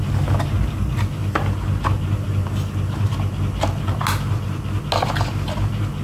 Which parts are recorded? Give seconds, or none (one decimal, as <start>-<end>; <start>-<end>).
0.0-6.0